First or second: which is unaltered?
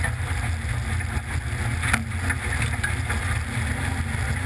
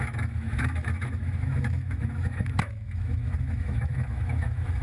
first